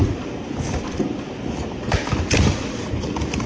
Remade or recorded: recorded